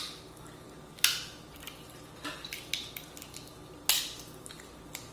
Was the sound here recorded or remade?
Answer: recorded